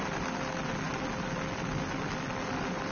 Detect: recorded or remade recorded